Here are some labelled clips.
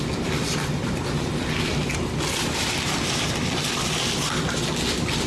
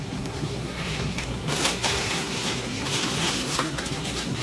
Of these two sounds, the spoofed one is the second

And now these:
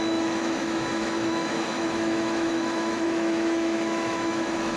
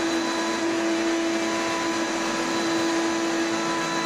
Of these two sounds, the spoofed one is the first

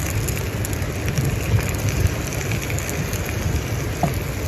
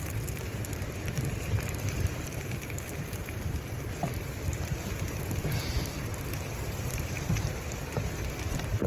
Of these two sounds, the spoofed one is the second